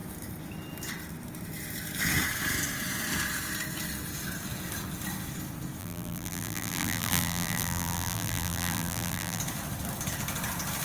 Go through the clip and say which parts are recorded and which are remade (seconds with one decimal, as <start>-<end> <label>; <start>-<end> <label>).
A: 0.0-5.8 recorded; 5.8-9.4 remade; 9.4-10.8 recorded

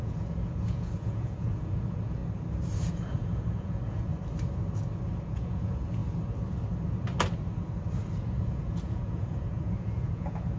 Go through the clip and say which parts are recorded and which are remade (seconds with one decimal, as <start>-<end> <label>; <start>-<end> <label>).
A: 0.0-2.2 remade; 2.2-2.9 recorded; 2.9-4.1 remade; 4.1-5.1 recorded; 5.1-6.0 remade; 6.0-8.1 recorded; 8.1-10.6 remade

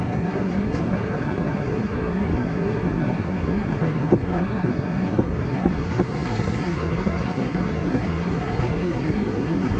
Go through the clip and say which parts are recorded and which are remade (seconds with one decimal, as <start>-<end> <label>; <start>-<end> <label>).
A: 0.0-9.8 remade